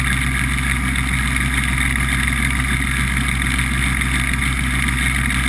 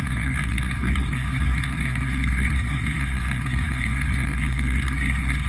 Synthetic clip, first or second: second